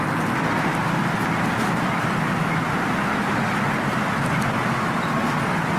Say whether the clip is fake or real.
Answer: real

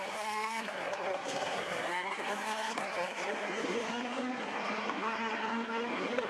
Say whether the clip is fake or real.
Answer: fake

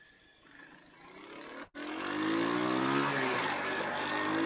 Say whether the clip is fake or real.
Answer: real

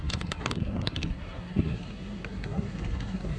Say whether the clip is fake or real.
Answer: fake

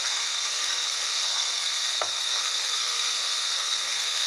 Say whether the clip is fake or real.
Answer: fake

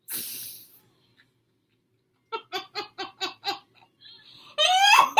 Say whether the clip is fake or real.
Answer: real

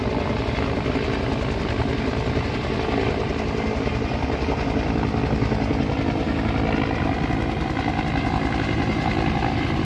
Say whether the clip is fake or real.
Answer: real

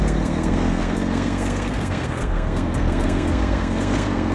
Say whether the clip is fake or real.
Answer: fake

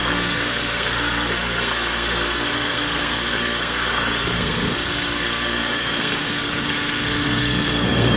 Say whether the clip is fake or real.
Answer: fake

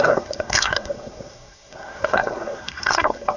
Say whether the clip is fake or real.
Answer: fake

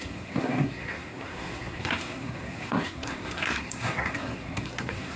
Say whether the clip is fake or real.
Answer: fake